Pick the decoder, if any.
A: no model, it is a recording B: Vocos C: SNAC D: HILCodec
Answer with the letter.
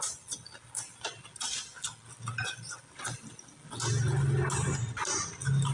A